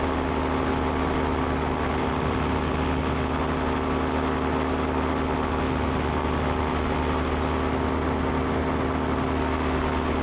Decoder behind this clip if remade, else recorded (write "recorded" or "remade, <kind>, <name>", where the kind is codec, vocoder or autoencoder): recorded